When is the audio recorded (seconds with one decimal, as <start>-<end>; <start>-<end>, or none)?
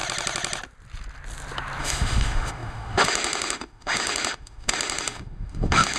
0.0-1.8